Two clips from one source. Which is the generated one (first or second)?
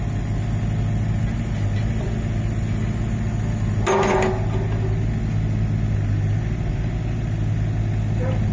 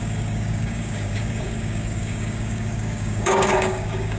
second